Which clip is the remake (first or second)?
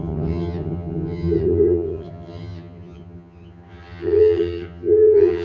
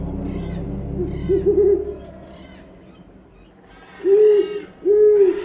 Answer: first